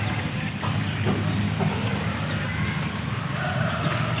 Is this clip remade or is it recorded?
recorded